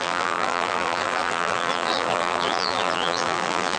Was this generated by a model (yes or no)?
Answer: yes